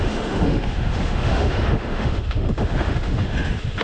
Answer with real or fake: fake